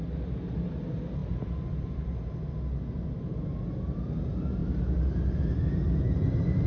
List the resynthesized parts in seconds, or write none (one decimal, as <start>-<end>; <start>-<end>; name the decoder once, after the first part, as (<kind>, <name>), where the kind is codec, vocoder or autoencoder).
none